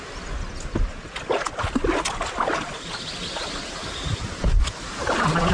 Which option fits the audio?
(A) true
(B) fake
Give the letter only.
A